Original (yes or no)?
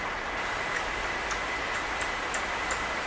yes